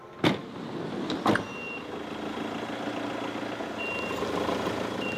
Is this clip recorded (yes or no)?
yes